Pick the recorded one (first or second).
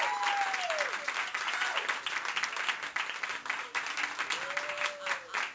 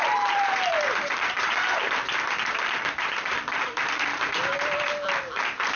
first